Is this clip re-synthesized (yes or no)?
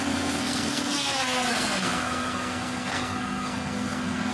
yes